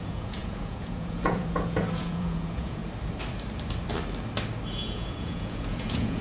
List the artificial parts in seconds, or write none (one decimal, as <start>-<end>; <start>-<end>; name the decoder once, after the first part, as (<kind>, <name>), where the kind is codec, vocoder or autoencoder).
0.0-2.8 (vocoder, Vocos); 4.7-6.2

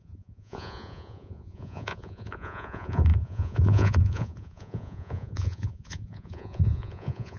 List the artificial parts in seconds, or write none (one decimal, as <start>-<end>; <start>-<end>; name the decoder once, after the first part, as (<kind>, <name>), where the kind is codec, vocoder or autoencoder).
0.0-7.4 (vocoder, Vocos)

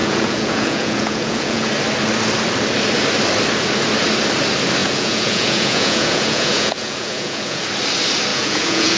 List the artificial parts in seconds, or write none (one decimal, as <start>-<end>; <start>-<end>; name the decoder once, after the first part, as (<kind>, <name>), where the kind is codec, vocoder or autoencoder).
0.0-1.7 (vocoder, Vocos); 4.8-7.6; 8.3-9.0

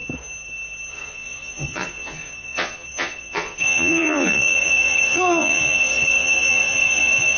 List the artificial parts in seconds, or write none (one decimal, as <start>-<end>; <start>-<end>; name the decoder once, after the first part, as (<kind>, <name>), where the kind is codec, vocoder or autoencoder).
0.9-7.4 (vocoder, Vocos)

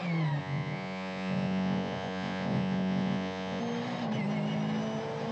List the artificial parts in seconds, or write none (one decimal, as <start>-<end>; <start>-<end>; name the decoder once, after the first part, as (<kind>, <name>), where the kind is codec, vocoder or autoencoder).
0.4-3.6 (vocoder, Vocos)

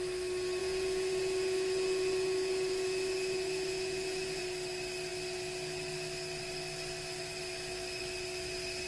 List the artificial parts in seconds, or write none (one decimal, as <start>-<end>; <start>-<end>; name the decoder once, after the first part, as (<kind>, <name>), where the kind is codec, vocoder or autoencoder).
0.6-4.4 (vocoder, Vocos)

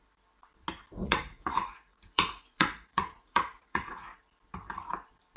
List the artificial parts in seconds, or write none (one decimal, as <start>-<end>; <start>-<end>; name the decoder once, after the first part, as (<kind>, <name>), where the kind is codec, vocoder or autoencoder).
1.0-4.2 (vocoder, Vocos)

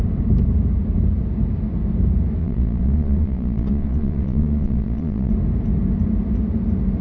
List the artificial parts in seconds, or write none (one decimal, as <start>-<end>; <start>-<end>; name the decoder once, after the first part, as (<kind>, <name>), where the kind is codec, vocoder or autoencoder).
2.4-5.3 (vocoder, Vocos)